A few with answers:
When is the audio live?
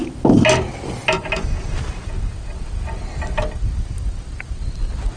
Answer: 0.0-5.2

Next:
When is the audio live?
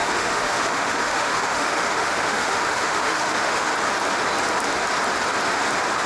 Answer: 3.7-6.1